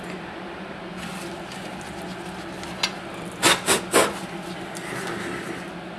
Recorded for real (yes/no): yes